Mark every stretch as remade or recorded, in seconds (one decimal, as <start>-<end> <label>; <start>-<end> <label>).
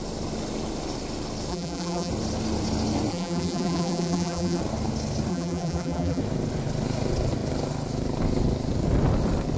0.0-1.5 recorded; 1.5-2.1 remade; 2.1-3.1 recorded; 3.1-4.6 remade; 4.6-5.3 recorded; 5.3-6.2 remade; 6.2-9.6 recorded